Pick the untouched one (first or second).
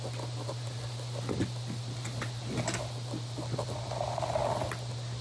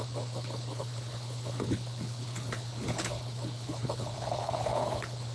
first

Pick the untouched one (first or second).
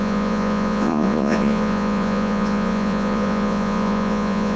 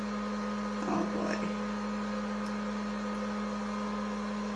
second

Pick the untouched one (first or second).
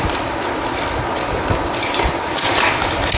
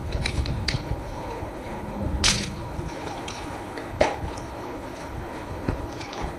first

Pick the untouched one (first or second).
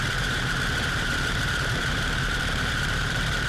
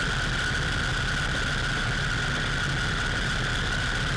second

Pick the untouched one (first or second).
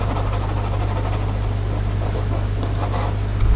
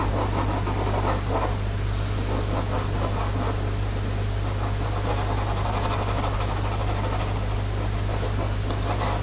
second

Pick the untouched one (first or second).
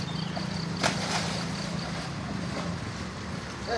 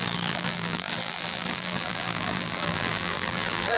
first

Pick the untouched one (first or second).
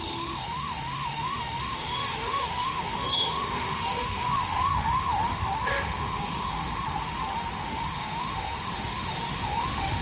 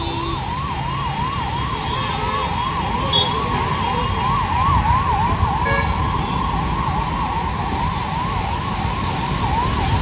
second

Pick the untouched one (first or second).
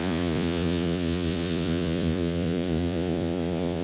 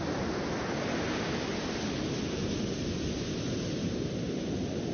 second